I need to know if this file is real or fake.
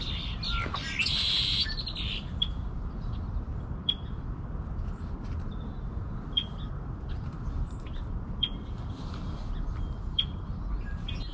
real